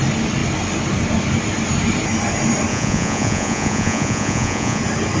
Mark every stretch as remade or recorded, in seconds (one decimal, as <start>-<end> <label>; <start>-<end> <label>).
0.0-2.7 recorded; 2.7-4.8 remade; 4.8-5.2 recorded